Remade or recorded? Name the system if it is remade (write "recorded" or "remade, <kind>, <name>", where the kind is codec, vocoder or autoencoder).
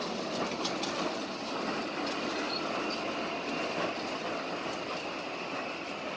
recorded